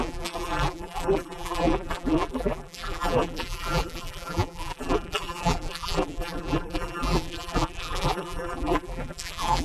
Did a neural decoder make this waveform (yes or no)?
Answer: yes